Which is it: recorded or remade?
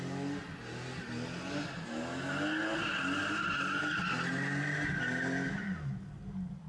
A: recorded